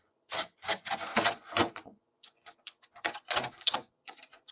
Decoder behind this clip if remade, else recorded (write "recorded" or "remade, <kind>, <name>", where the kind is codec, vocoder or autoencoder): remade, vocoder, Vocos